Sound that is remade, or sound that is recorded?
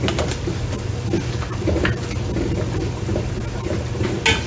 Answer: recorded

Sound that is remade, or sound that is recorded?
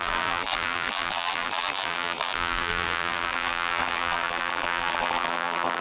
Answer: remade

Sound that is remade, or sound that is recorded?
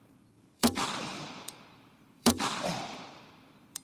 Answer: remade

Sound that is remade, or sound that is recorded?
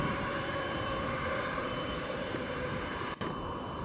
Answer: remade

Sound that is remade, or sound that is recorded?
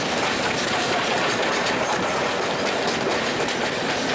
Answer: recorded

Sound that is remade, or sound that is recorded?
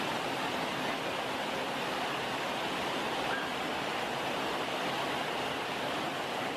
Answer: recorded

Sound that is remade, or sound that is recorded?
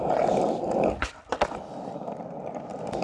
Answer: remade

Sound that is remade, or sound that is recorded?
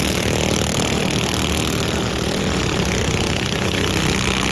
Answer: recorded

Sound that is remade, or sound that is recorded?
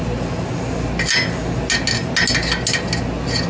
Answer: recorded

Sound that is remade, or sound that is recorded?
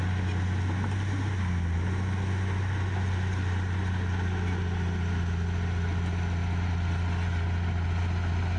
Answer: recorded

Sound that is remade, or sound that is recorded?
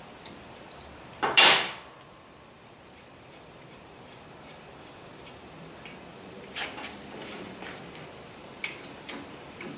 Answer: remade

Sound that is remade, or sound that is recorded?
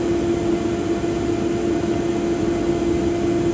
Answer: recorded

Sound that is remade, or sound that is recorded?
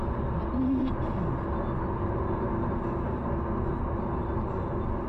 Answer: recorded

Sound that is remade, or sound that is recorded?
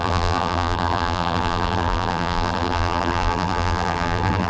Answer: remade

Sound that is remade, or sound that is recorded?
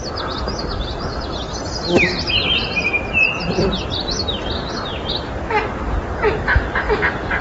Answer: recorded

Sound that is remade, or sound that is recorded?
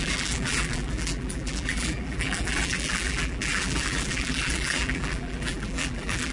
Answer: remade